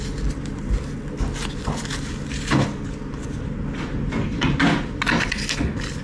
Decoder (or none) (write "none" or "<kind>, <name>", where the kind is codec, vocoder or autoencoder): none